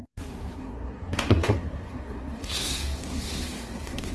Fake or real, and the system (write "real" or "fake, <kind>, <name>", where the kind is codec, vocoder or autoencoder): fake, codec, SNAC